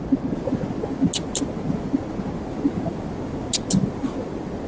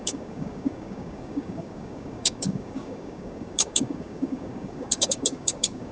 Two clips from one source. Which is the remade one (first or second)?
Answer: second